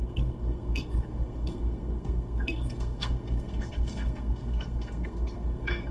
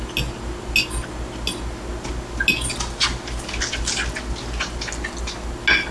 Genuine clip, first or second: second